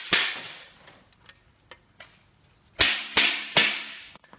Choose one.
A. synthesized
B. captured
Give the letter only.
B